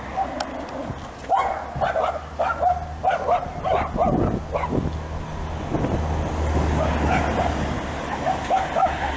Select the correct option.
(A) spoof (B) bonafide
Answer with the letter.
B